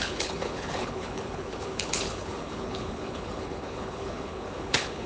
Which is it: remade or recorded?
remade